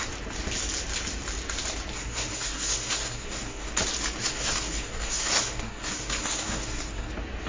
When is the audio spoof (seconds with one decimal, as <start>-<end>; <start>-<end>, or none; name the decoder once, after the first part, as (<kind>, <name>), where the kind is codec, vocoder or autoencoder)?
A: 1.9-3.7 (codec, SNAC); 4.2-7.1